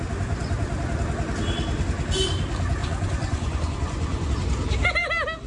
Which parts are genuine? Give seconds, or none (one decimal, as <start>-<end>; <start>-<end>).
0.0-2.8; 4.3-5.5